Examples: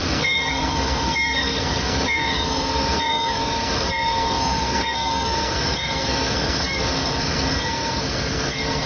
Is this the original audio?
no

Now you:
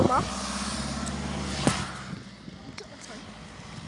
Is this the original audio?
yes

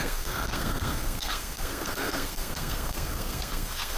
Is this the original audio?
no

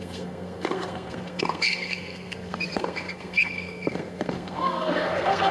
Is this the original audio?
no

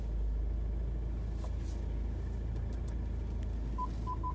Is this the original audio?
yes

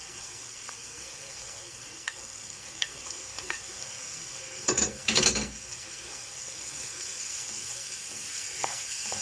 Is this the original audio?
no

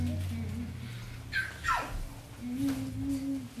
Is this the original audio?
yes